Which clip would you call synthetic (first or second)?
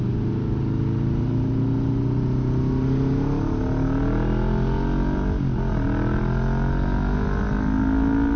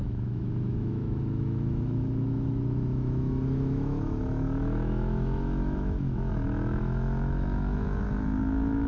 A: second